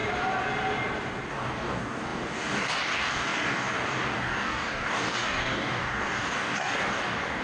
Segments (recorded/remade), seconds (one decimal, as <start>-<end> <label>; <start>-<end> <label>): 0.0-1.3 recorded; 1.3-7.4 remade